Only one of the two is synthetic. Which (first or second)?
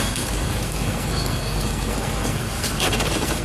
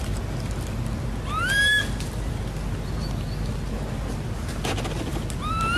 first